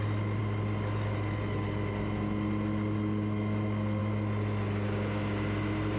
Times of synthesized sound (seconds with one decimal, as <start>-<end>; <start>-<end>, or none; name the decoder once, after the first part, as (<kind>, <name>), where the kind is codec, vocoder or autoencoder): none